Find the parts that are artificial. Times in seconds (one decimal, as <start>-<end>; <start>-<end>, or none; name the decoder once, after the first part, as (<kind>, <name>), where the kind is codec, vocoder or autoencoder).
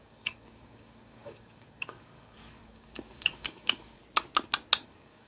0.0-4.0 (codec, DAC); 4.8-5.3